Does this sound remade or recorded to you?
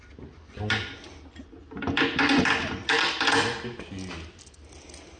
recorded